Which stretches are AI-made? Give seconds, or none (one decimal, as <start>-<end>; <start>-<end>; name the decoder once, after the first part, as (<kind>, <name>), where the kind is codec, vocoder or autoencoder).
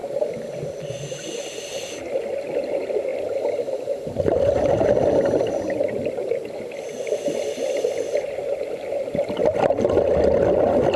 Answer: none